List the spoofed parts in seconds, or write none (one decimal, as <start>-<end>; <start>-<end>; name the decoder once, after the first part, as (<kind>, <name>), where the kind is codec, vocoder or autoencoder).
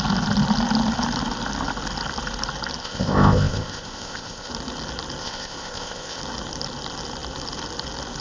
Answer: 2.8-4.5 (codec, ZipCodec); 5.2-6.2